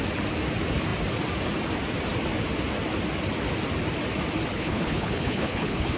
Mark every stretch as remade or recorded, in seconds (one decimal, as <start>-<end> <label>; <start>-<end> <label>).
0.0-4.5 recorded; 4.5-6.0 remade